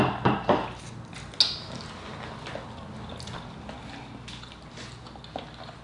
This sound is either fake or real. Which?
real